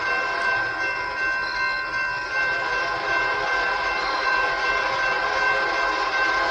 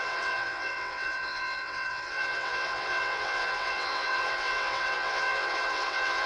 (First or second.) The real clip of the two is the first